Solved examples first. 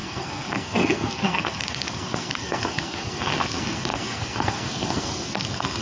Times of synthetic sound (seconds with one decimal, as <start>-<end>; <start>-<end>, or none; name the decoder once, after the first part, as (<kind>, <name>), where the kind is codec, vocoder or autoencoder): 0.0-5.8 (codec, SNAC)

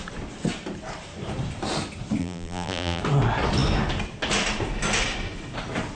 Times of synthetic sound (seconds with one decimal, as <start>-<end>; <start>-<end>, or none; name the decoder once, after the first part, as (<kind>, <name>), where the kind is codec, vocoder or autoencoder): 2.2-3.0 (vocoder, BigVGAN v2)

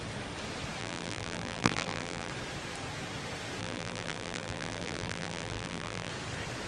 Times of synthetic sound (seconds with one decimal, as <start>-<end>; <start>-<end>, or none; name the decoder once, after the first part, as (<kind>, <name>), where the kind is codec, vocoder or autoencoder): 0.8-2.3 (vocoder, BigVGAN v2); 3.6-6.1

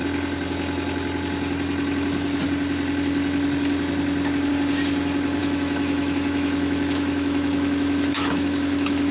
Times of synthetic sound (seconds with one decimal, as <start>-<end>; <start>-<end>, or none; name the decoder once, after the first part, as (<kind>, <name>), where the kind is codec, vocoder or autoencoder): 5.4-9.1 (autoencoder, DAC-VAE)

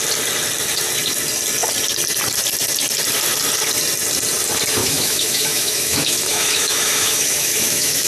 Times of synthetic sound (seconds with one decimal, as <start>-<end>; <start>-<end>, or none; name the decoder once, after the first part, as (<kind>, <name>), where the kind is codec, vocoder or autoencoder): 4.8-8.1 (autoencoder, DAC-VAE)

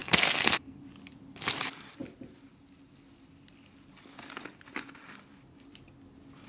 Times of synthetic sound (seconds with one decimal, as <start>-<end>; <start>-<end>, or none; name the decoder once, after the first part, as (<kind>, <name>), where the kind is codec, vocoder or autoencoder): 0.0-0.8 (codec, SNAC)

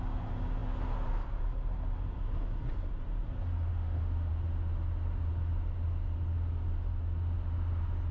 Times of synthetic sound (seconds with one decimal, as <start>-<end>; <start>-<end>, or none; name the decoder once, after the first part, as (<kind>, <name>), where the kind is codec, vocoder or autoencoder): 3.7-4.3 (autoencoder, DAC-VAE)

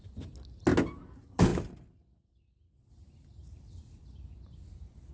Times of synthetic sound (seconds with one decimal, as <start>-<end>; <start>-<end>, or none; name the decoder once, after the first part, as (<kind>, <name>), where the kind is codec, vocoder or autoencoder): 3.4-5.1 (vocoder, BigVGAN v2)